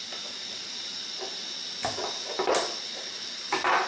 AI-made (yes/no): no